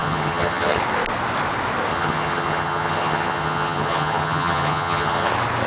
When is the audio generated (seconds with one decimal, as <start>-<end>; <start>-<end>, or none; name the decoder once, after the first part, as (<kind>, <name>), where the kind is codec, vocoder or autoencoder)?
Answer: 0.0-0.8 (vocoder, HiFi-GAN); 1.9-5.3